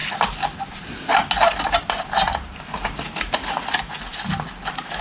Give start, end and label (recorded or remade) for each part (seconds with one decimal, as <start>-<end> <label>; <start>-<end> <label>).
0.0-5.0 recorded